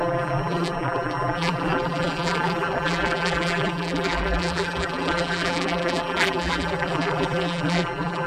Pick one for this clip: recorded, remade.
remade